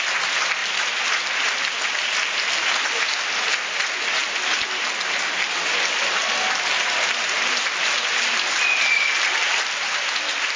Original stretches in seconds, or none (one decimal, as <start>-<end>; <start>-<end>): 0.0-10.6